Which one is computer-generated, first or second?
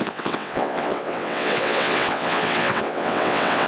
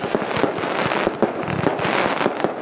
first